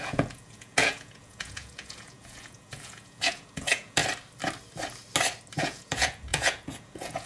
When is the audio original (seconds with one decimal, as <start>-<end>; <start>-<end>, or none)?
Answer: 4.0-5.6

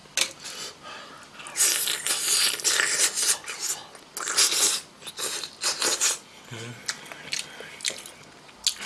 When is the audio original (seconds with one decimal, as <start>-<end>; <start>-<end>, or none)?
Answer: 0.0-8.9